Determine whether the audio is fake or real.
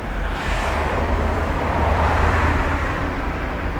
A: fake